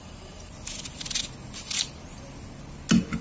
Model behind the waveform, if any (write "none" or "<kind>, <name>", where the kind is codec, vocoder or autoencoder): none